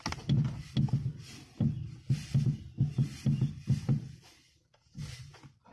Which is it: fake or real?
real